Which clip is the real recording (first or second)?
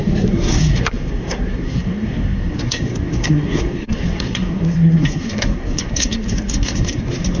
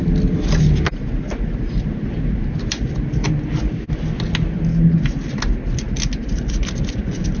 second